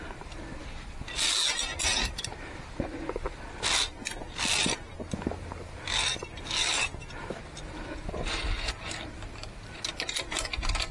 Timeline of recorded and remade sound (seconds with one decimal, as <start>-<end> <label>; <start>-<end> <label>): 0.0-10.9 recorded